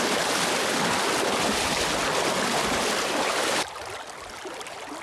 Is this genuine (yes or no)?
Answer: yes